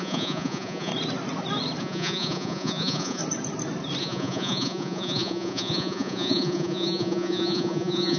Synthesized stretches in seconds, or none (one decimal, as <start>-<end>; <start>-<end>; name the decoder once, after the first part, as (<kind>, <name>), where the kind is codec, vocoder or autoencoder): 0.0-0.9 (vocoder, Vocos); 1.8-3.2; 4.0-8.2